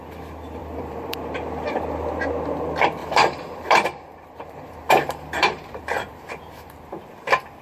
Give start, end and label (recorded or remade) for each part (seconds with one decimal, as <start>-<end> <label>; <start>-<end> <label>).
0.0-0.6 recorded; 0.6-1.2 remade; 1.2-3.0 recorded; 3.0-6.7 remade; 6.7-7.6 recorded